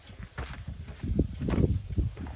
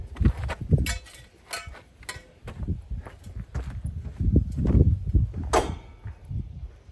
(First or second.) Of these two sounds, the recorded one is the second